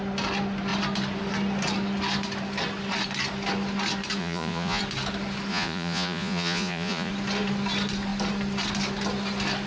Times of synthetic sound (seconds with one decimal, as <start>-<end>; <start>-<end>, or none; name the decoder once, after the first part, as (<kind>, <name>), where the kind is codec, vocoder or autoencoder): 4.2-4.8 (vocoder, Vocos); 5.5-7.1